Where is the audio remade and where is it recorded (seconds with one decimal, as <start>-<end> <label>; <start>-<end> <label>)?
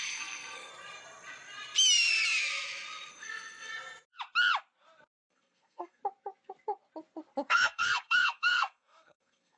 0.0-0.7 remade; 0.7-3.1 recorded; 3.1-3.7 remade; 3.7-5.2 recorded; 5.2-6.0 remade; 6.0-7.5 recorded; 7.5-9.6 remade